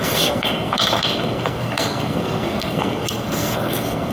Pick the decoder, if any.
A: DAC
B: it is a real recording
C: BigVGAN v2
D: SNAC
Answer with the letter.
D